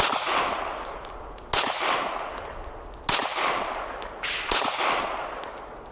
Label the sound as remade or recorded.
recorded